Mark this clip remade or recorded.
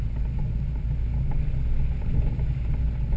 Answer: recorded